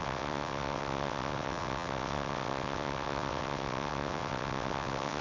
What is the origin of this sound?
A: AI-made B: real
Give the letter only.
A